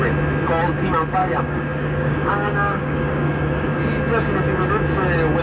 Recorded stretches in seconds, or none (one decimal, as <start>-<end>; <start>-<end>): 0.0-1.2; 3.8-5.4